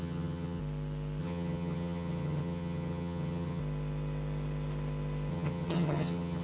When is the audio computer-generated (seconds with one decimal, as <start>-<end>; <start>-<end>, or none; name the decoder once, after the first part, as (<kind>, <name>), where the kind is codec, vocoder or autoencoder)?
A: 0.0-0.6 (vocoder, HiFi-GAN); 1.2-3.6; 5.3-6.4